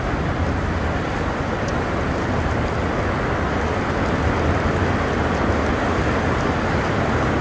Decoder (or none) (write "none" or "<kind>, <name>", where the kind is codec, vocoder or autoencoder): none